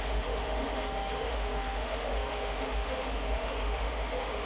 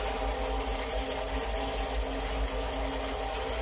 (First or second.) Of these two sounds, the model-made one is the first